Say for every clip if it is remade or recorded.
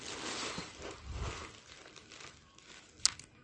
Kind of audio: recorded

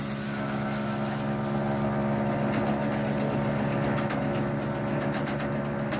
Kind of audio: recorded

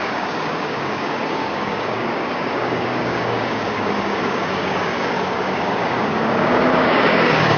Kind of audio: remade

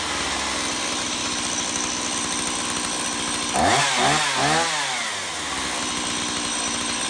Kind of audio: recorded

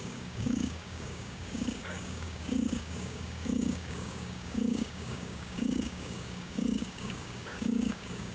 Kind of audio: remade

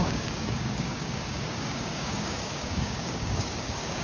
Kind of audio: remade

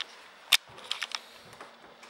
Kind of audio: recorded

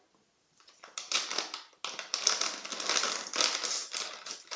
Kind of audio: recorded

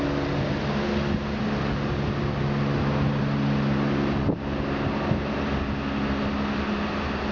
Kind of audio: recorded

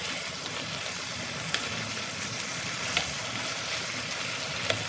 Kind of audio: recorded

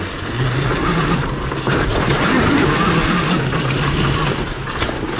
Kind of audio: recorded